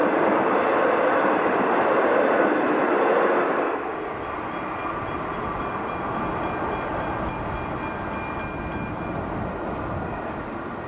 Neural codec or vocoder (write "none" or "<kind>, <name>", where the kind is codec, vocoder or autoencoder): none